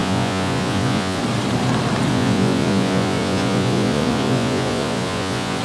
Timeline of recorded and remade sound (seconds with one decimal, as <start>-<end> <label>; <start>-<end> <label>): 0.0-1.2 remade; 1.2-2.1 recorded; 2.1-5.6 remade